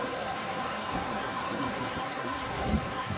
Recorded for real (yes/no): no